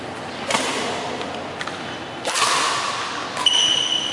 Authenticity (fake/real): real